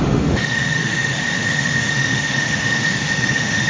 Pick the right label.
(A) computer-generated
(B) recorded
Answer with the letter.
A